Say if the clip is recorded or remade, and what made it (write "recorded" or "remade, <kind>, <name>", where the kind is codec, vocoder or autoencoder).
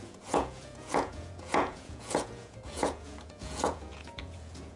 remade, vocoder, Vocos